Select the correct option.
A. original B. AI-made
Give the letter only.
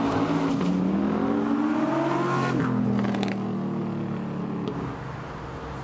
A